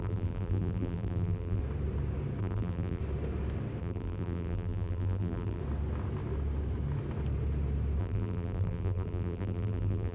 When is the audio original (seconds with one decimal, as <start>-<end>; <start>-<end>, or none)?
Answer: 1.6-2.4; 3.0-3.8; 5.6-8.0

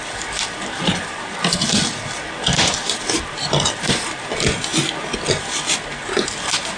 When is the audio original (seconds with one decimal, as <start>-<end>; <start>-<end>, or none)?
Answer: 4.1-6.8